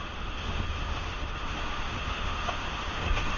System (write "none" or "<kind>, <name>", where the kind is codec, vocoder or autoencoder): autoencoder, DAC-VAE